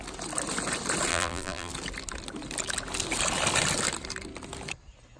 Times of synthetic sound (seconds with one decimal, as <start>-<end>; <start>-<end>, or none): 1.1-1.7